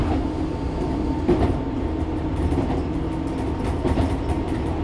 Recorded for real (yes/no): yes